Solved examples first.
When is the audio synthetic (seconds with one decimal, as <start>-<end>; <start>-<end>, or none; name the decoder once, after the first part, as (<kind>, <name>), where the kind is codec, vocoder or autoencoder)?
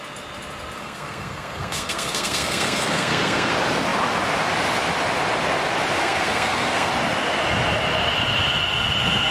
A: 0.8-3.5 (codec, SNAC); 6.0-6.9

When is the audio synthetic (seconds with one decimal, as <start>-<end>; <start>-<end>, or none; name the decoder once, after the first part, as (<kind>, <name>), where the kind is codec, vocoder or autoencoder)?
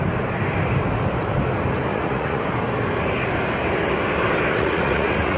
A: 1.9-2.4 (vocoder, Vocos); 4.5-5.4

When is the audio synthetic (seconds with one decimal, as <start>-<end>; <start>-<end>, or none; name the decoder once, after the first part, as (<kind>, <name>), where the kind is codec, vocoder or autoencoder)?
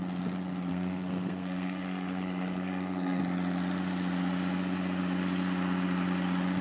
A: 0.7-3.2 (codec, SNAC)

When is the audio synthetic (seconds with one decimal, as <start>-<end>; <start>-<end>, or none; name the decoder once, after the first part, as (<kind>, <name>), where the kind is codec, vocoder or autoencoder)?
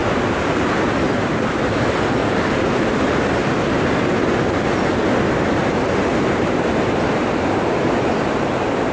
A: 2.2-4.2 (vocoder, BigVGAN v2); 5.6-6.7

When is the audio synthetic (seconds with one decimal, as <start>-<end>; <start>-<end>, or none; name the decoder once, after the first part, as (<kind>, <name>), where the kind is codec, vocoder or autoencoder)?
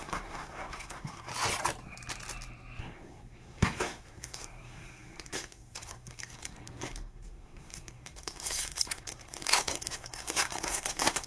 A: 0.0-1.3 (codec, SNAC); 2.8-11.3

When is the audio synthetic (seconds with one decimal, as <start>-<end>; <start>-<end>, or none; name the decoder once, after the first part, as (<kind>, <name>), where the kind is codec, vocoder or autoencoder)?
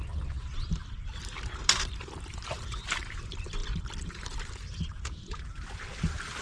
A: 3.6-4.4 (vocoder, BigVGAN v2)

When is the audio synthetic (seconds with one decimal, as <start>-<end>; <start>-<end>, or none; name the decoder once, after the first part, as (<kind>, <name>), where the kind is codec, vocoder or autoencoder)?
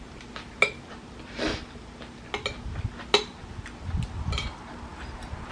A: none